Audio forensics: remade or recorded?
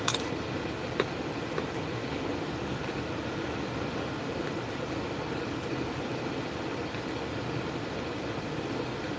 recorded